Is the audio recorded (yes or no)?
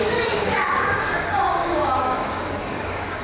no